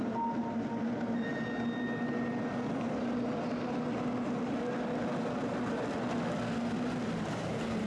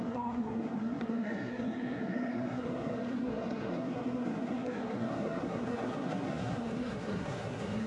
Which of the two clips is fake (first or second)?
second